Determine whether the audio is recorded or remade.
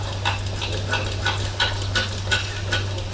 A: recorded